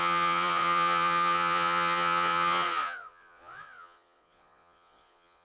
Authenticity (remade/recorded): remade